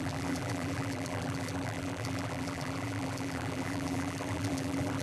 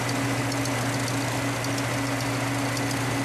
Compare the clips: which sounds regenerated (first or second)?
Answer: first